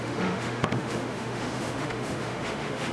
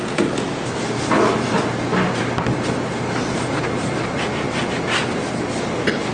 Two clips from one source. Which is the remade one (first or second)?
first